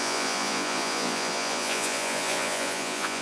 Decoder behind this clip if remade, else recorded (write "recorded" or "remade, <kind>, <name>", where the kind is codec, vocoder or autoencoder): remade, vocoder, Vocos